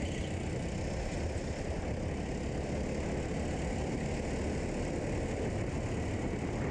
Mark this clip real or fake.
real